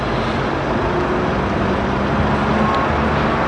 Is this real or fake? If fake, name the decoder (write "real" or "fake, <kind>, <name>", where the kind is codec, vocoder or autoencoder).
real